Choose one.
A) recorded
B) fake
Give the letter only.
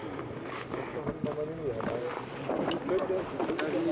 A